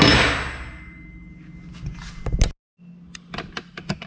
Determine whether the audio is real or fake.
real